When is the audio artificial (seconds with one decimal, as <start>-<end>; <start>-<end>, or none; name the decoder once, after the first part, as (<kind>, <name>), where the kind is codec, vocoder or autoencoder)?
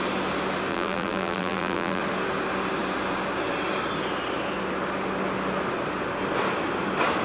0.7-2.0 (vocoder, BigVGAN v2)